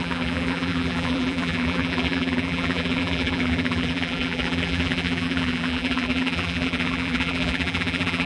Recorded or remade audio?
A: remade